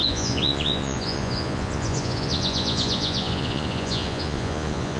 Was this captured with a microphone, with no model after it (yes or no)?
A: no